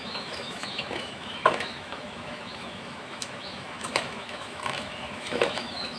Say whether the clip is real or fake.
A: fake